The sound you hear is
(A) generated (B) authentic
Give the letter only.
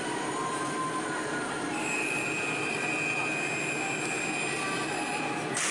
B